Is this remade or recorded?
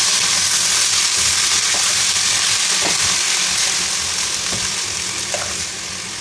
recorded